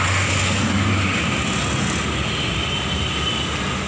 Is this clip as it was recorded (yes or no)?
yes